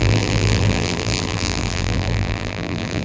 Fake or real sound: fake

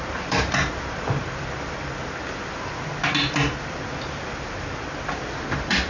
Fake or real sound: fake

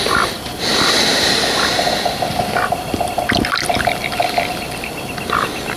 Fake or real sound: real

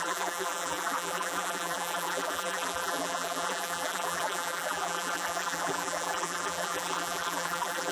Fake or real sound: fake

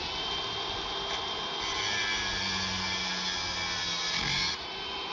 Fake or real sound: real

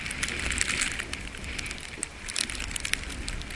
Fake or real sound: fake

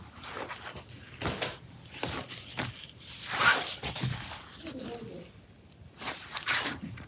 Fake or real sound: real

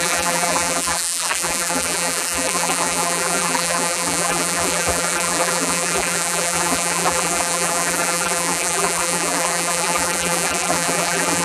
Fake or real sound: fake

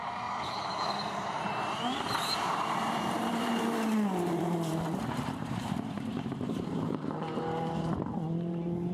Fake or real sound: fake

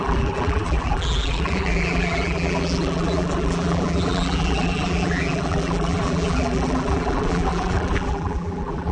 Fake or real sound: fake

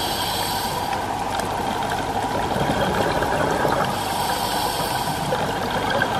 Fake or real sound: fake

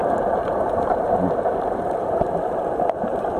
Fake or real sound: fake